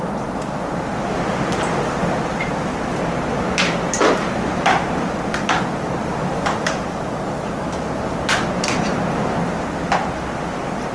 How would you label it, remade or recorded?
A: recorded